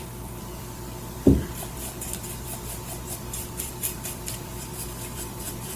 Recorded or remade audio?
remade